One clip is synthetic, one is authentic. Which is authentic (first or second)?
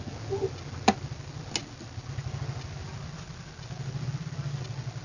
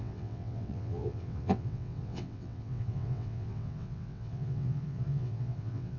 first